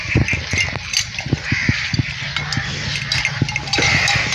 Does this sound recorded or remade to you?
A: recorded